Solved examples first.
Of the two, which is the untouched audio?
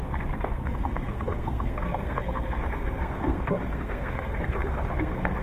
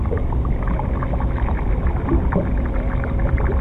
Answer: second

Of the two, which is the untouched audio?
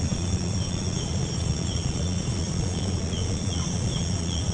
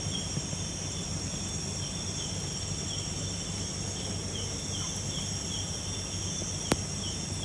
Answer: second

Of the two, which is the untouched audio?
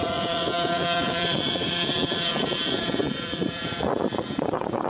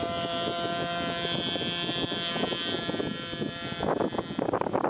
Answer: second